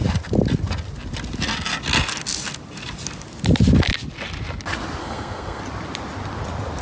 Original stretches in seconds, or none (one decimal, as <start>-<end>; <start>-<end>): 0.0-5.0; 5.6-6.8